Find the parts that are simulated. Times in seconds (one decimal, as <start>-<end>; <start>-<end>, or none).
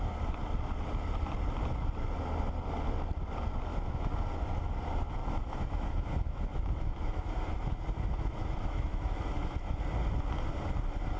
3.7-4.2; 5.2-9.8